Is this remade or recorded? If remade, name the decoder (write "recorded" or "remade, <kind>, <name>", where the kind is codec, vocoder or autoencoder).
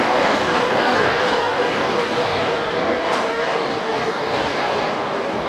remade, codec, DAC